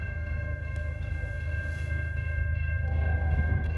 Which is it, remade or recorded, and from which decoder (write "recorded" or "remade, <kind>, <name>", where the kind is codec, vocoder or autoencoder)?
remade, codec, SNAC